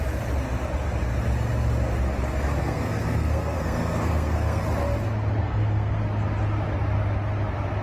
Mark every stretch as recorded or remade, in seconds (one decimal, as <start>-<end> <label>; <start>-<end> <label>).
0.0-2.6 recorded; 2.6-4.6 remade; 4.6-5.4 recorded; 5.4-6.0 remade; 6.0-7.8 recorded